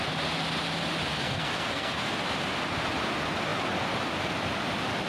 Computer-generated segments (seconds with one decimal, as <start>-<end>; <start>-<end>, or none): 1.1-2.1